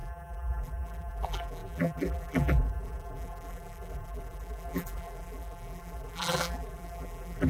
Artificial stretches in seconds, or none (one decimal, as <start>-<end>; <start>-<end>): 0.0-7.5